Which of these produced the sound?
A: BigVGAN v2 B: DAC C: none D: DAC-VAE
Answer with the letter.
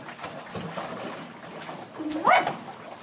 C